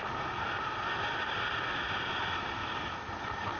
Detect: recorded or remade recorded